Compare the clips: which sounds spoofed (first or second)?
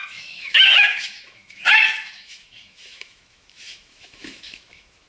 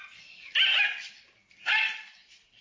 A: first